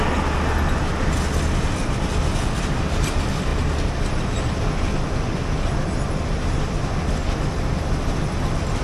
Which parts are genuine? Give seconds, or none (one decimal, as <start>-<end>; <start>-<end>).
0.0-8.8